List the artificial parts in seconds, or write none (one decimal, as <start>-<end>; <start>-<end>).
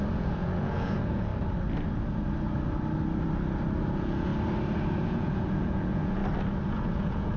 0.0-1.3; 3.9-4.3; 4.9-6.2; 6.8-7.4